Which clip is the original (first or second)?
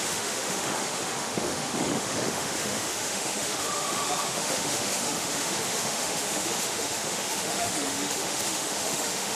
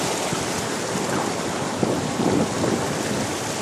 second